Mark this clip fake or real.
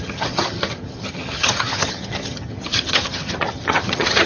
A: fake